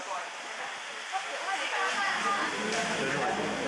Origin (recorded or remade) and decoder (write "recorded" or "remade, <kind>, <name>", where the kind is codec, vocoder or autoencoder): recorded